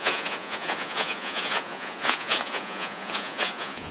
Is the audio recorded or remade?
remade